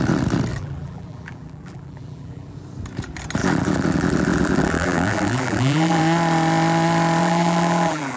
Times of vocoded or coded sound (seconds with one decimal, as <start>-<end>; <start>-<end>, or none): 0.5-2.5; 3.4-6.0; 7.2-8.2